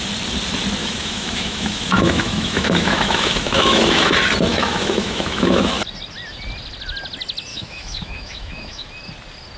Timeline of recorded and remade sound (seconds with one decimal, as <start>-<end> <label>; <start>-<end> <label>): 0.0-0.8 recorded; 0.8-4.1 remade; 4.1-4.5 recorded; 4.5-5.7 remade; 5.7-7.5 recorded; 7.5-8.9 remade; 8.9-9.6 recorded